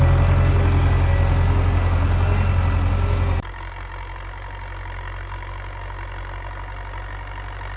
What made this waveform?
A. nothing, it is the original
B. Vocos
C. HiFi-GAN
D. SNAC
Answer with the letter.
A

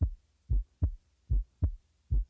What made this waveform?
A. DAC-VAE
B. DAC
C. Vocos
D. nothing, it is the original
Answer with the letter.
D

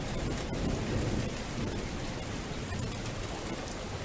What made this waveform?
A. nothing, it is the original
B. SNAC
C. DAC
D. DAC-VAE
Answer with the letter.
A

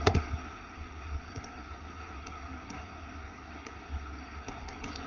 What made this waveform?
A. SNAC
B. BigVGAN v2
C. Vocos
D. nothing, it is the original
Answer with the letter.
A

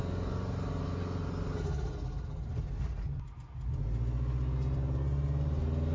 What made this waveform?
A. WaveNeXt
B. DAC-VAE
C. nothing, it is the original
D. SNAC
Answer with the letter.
C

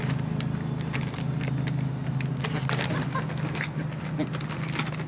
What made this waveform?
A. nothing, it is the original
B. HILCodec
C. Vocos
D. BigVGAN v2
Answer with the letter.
A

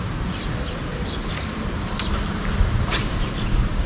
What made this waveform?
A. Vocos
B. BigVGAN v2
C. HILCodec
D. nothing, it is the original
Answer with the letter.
D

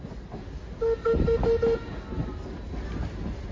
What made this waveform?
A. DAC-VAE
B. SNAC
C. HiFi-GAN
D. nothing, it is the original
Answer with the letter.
D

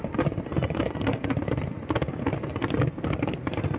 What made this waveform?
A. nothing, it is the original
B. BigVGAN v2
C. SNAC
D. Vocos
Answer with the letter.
A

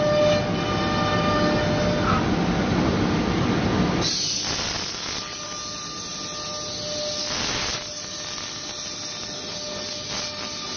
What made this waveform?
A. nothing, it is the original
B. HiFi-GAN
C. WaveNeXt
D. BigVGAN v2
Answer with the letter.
A